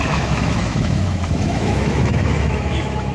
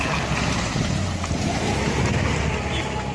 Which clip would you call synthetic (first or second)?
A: first